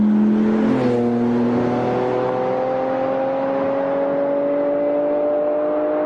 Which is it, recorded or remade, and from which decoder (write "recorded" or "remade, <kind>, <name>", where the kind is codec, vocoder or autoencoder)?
recorded